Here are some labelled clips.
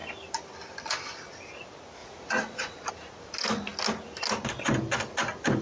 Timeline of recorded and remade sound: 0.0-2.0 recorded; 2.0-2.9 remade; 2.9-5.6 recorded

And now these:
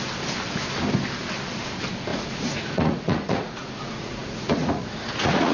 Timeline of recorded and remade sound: 0.0-2.1 recorded; 2.1-5.5 remade

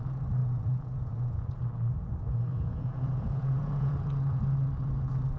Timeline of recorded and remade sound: 0.0-0.4 recorded; 0.4-1.6 remade; 1.6-2.5 recorded; 2.5-3.9 remade; 3.9-5.4 recorded